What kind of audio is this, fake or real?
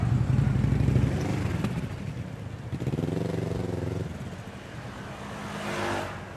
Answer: real